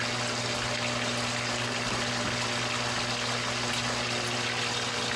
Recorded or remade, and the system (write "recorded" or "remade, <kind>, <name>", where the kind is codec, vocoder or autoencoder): recorded